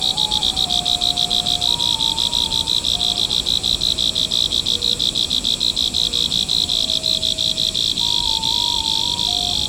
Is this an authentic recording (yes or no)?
yes